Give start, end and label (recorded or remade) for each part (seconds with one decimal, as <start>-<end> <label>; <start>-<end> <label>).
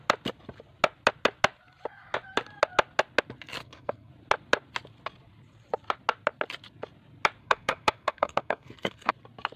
0.0-3.6 recorded; 3.6-4.1 remade; 4.1-7.4 recorded; 7.4-9.1 remade; 9.1-9.6 recorded